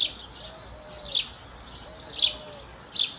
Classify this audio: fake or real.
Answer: real